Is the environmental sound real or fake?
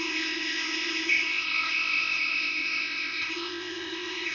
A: fake